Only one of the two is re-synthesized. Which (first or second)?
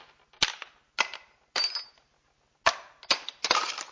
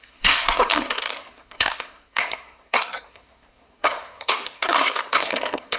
second